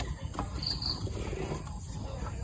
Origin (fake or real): real